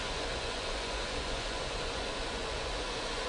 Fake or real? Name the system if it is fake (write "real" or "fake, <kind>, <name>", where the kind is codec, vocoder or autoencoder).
fake, vocoder, Vocos